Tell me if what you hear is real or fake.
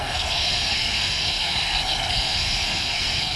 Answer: fake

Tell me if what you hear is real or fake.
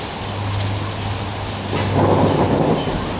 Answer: real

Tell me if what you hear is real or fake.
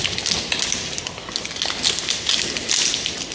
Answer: real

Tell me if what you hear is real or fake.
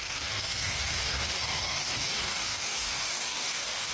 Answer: fake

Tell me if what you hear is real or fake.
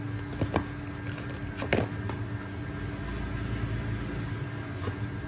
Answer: real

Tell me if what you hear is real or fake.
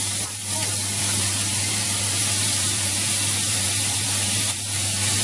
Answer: fake